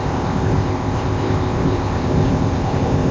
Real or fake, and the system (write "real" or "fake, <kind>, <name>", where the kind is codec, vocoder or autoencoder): fake, codec, ZipCodec